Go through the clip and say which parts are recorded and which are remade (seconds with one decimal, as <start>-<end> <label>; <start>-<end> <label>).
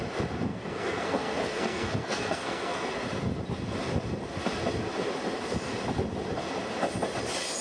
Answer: 0.0-0.5 recorded; 0.5-2.9 remade; 2.9-7.6 recorded